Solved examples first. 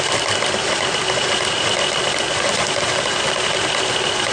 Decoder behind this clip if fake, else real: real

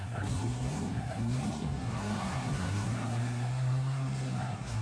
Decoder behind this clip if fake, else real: fake, codec, SNAC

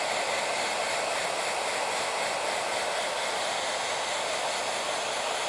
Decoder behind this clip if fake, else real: real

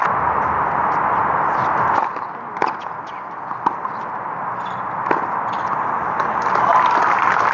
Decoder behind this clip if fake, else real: real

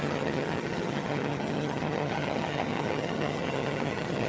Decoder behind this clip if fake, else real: fake, vocoder, HiFi-GAN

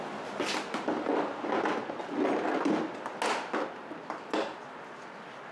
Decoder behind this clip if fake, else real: real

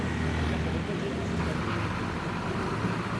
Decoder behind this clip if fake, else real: real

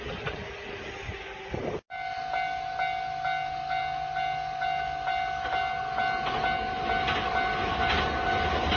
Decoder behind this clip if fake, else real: real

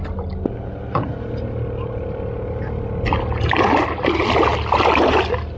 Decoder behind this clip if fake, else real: real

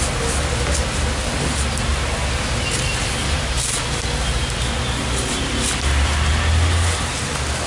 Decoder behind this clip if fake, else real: real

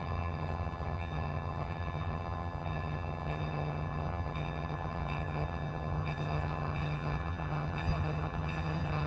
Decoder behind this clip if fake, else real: fake, vocoder, HiFi-GAN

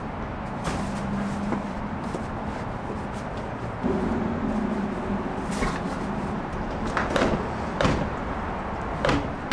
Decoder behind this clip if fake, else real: real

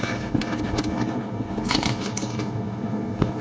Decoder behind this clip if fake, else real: fake, codec, SNAC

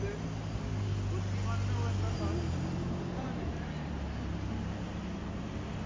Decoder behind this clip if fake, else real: real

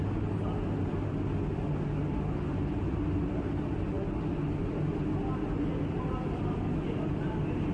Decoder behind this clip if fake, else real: real